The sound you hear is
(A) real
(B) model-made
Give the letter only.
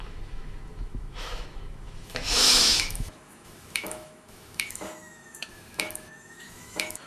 B